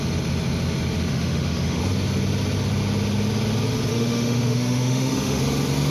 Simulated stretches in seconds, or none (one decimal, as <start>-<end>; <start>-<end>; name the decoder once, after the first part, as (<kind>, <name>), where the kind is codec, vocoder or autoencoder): 1.1-1.8 (autoencoder, DAC-VAE); 3.9-5.4